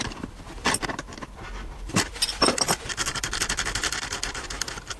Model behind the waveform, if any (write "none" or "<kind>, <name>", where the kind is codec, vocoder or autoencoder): vocoder, BigVGAN v2